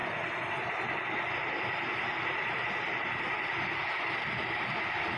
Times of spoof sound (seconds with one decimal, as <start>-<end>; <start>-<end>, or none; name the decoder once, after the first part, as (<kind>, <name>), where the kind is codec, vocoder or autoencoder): none